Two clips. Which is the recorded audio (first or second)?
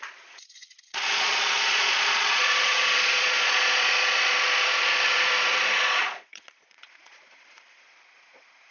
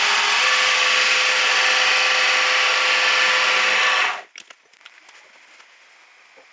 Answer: second